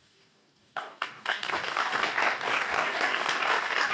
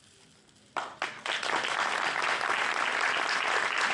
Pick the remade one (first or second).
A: first